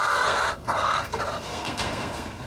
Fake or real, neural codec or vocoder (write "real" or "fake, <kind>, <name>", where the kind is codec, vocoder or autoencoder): fake, codec, SNAC